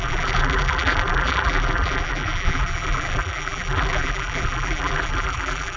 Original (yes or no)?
no